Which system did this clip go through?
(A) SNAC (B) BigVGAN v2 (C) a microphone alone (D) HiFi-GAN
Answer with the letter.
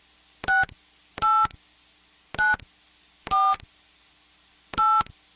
C